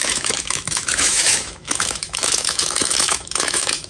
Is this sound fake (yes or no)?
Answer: yes